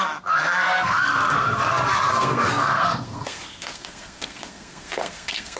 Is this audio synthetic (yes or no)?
yes